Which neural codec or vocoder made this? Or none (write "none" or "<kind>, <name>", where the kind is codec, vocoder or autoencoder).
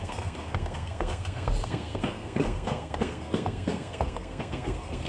codec, SNAC